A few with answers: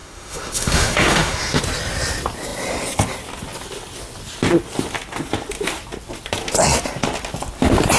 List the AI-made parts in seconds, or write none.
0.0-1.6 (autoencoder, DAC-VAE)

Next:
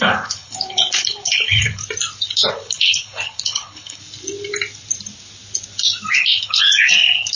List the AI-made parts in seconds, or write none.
0.0-1.8 (codec, HILCodec); 2.5-4.0; 6.1-7.4

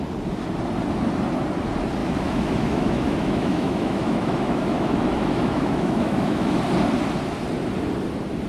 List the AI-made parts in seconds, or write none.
2.0-6.6 (autoencoder, DAC-VAE)

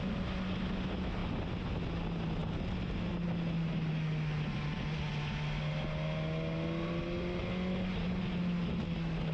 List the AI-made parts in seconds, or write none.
none